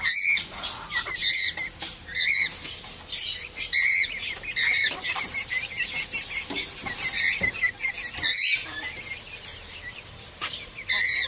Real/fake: real